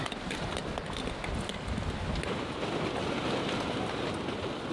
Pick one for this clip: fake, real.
real